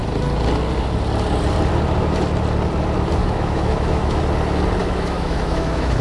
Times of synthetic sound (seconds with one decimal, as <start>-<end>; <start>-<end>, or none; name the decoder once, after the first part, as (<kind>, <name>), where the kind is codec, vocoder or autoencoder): 3.2-4.2 (autoencoder, DAC-VAE); 4.8-6.0